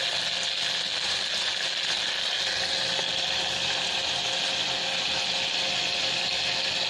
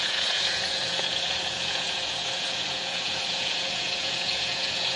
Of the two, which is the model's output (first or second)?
second